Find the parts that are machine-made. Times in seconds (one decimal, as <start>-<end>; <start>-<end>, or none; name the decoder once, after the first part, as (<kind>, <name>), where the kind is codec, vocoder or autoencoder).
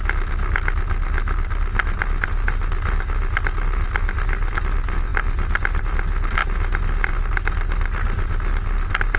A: none